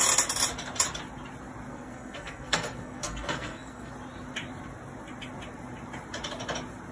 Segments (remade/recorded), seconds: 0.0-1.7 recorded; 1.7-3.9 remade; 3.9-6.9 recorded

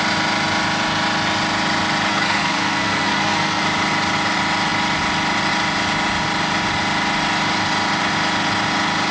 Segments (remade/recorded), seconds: 0.0-2.1 recorded; 2.1-3.6 remade; 3.6-9.1 recorded

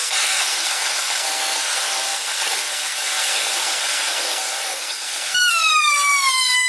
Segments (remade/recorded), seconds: 0.0-6.7 remade

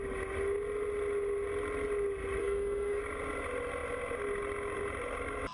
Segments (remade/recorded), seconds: 0.0-2.4 recorded; 2.4-3.0 remade; 3.0-5.5 recorded

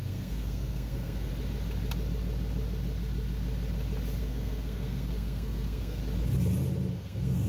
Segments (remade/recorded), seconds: 0.0-1.3 remade; 1.3-4.2 recorded; 4.2-6.0 remade; 6.0-6.9 recorded; 6.9-7.5 remade

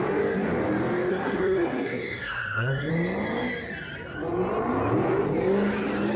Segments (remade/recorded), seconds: 0.0-1.1 recorded; 1.1-2.9 remade; 2.9-6.2 recorded